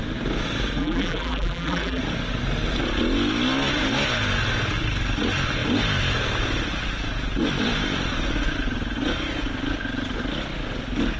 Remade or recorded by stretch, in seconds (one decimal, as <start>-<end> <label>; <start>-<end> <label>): 0.0-0.8 recorded; 0.8-2.0 remade; 2.0-11.2 recorded